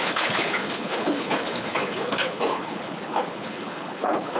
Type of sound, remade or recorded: remade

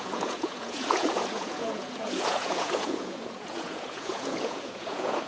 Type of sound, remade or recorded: remade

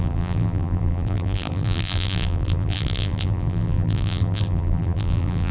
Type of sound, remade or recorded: remade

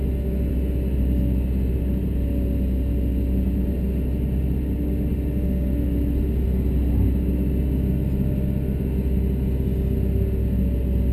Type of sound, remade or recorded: recorded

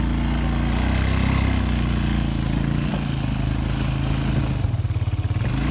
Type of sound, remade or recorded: recorded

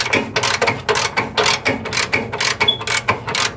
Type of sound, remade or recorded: recorded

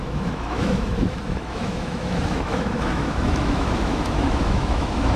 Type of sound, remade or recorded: remade